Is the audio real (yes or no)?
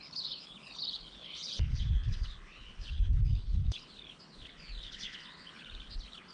no